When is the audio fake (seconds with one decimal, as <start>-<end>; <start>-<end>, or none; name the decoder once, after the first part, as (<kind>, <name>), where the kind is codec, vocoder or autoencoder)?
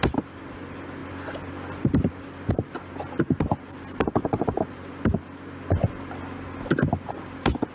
none